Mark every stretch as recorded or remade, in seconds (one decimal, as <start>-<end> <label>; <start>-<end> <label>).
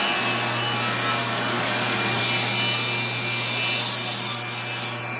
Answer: 0.0-1.2 recorded; 1.2-2.2 remade; 2.2-5.2 recorded